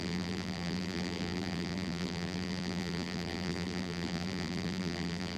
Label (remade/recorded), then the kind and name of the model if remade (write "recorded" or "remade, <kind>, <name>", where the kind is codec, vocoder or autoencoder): remade, vocoder, BigVGAN v2